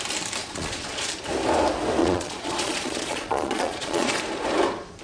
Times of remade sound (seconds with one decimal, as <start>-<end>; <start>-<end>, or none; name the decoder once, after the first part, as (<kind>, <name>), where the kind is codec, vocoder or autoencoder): 0.4-1.1 (vocoder, Vocos); 2.0-4.2